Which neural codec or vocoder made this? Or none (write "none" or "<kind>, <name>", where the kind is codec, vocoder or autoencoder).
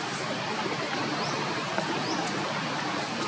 vocoder, BigVGAN v2